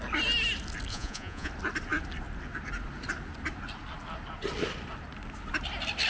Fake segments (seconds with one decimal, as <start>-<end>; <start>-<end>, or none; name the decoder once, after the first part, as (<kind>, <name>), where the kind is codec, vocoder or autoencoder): 0.9-1.5 (vocoder, Vocos)